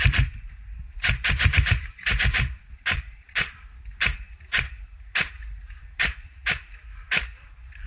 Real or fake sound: fake